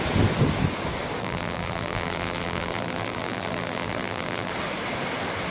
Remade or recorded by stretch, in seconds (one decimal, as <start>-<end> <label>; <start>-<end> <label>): 0.0-1.2 recorded; 1.2-4.5 remade; 4.5-5.5 recorded